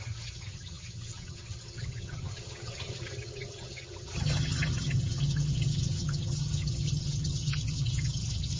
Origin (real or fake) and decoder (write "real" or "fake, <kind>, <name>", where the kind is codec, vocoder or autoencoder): fake, vocoder, HiFi-GAN